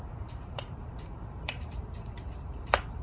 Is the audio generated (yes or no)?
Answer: yes